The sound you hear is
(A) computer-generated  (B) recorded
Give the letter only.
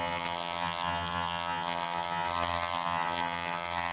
A